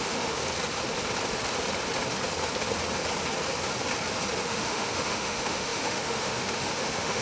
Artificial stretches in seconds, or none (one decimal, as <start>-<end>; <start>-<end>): 0.0-0.4; 4.4-7.2